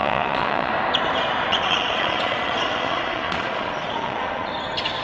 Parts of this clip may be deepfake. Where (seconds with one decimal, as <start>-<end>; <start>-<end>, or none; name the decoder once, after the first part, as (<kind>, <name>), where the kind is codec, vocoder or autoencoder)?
0.0-0.7 (vocoder, Vocos); 1.5-4.5